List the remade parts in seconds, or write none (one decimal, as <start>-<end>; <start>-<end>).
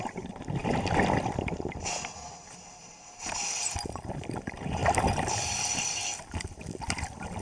none